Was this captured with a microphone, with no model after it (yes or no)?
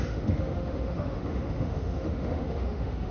no